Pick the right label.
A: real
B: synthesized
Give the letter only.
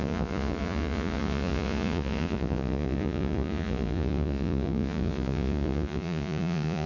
B